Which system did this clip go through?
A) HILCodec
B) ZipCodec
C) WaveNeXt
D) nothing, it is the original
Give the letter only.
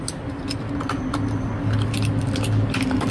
D